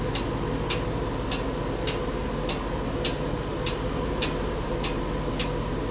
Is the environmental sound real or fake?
real